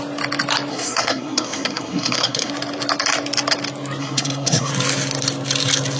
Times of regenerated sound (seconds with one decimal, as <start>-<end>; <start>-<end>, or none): 0.7-2.5; 4.0-4.7